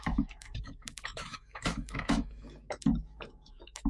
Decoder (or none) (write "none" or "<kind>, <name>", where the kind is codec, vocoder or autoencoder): autoencoder, DAC-VAE